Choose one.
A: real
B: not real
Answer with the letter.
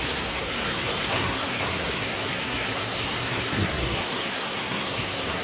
B